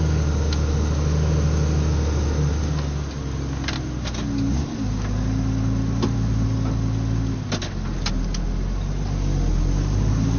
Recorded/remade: recorded